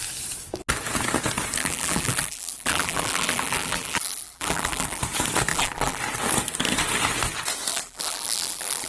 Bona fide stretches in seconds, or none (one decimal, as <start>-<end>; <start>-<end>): 0.0-1.6; 5.0-5.5; 6.0-7.7